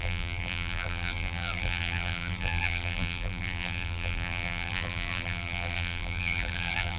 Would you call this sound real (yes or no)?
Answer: no